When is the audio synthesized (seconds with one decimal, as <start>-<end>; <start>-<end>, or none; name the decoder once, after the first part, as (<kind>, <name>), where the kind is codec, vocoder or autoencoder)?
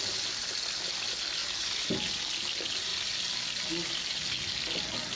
2.9-3.7 (vocoder, BigVGAN v2)